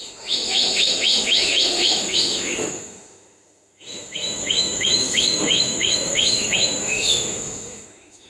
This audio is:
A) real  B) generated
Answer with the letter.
B